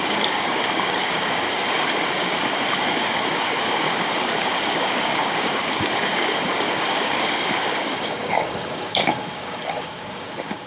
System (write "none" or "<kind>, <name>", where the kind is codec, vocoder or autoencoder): codec, DAC